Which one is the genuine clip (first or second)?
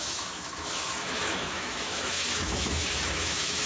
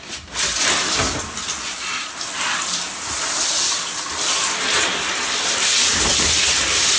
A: second